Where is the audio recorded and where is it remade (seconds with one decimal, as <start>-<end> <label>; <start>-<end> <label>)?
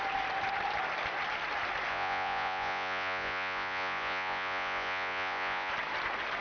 0.0-1.9 recorded; 1.9-5.7 remade; 5.7-6.4 recorded